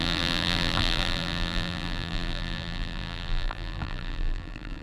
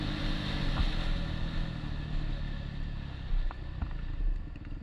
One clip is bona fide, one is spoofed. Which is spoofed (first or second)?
first